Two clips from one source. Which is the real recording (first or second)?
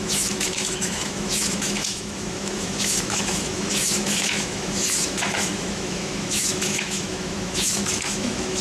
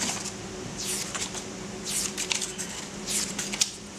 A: second